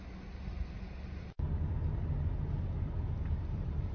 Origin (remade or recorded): recorded